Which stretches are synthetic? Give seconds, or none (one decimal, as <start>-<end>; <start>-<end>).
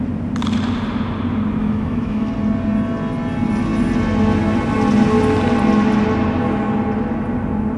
1.6-2.3